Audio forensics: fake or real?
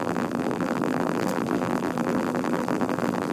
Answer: fake